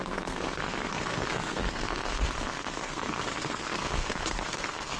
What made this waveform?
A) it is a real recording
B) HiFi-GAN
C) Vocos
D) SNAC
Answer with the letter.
D